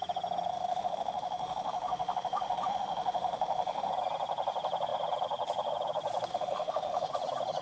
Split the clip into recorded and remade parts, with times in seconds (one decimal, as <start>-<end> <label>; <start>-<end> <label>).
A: 0.0-0.5 recorded; 0.5-3.9 remade; 3.9-6.3 recorded; 6.3-7.1 remade; 7.1-7.6 recorded